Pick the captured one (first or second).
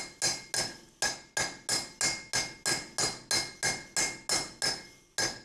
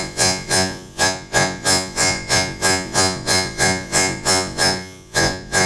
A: first